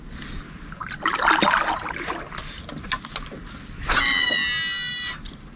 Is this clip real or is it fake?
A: real